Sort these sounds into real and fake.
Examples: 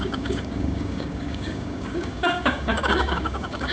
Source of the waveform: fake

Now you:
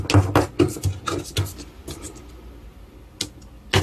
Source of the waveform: real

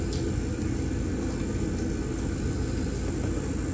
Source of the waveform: real